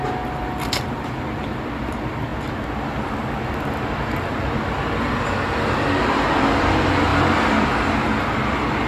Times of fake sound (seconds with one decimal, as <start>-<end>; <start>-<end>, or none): 0.0-2.3; 6.0-8.9